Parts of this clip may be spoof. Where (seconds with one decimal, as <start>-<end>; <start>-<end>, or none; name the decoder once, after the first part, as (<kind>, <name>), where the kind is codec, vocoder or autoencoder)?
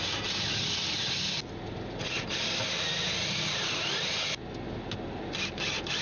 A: none